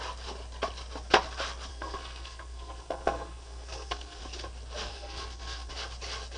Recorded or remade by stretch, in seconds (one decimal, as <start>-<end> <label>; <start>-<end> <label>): 0.0-1.7 recorded; 1.7-4.2 remade; 4.2-4.9 recorded; 4.9-5.7 remade; 5.7-6.4 recorded